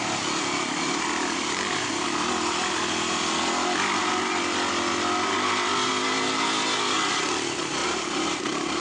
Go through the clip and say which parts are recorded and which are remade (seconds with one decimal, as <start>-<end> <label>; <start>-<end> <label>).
0.0-7.8 recorded; 7.8-8.4 remade; 8.4-8.8 recorded